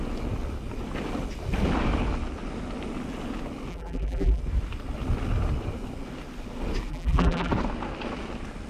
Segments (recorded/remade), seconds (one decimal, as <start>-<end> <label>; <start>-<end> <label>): 0.0-3.7 recorded; 3.7-4.4 remade; 4.4-6.9 recorded; 6.9-7.5 remade; 7.5-8.7 recorded